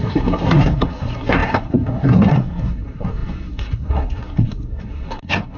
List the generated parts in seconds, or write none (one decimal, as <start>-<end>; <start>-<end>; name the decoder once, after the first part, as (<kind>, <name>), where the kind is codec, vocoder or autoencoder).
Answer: 0.0-5.6 (codec, SNAC)

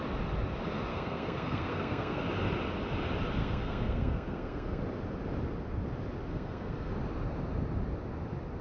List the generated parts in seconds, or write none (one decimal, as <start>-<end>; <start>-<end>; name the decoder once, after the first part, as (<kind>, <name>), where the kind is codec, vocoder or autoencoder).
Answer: 0.9-2.2 (codec, SNAC); 3.4-4.8; 6.3-6.9

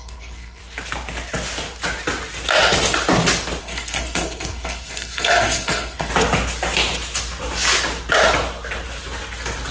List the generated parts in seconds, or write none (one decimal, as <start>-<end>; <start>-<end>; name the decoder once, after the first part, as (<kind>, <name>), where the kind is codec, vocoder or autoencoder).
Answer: 0.0-0.6 (codec, SNAC); 3.6-6.1

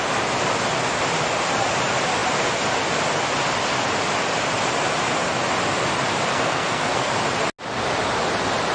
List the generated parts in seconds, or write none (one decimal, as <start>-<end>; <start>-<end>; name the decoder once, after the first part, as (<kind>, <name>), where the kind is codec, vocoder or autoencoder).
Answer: 6.3-7.1 (codec, SNAC)

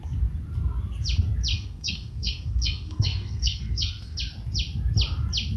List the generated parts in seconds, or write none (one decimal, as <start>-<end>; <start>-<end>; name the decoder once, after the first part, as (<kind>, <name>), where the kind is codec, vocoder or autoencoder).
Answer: 1.5-4.2 (codec, SNAC)

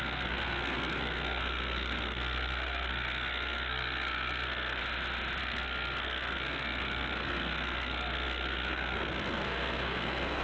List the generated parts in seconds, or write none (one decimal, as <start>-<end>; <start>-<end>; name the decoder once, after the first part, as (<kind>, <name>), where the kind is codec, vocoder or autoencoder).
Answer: 0.0-4.8 (codec, SNAC); 5.4-10.4